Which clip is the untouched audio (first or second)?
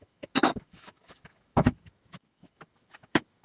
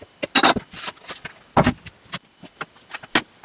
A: second